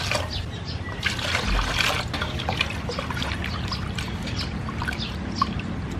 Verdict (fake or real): real